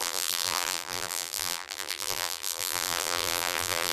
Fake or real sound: fake